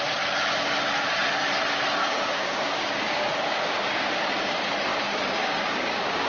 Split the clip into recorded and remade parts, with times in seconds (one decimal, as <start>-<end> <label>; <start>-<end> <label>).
0.0-2.0 recorded; 2.0-4.3 remade; 4.3-4.9 recorded; 4.9-6.3 remade